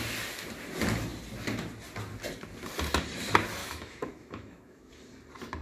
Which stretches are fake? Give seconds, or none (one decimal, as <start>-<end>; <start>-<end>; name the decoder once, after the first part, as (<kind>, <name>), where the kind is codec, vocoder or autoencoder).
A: 3.6-4.9 (autoencoder, DAC-VAE)